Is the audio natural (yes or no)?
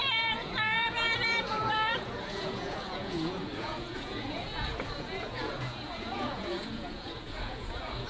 no